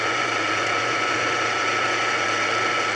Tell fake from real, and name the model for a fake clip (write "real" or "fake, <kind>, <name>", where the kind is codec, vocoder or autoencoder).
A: fake, vocoder, Vocos